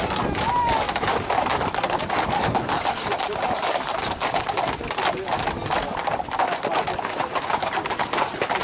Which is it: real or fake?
real